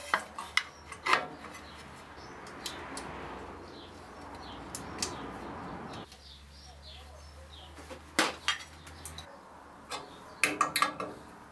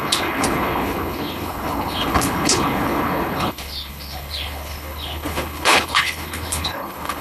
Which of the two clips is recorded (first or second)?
first